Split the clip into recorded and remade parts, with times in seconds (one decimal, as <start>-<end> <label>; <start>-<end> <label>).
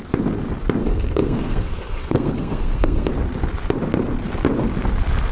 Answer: 0.0-0.8 recorded; 0.8-3.1 remade; 3.1-5.3 recorded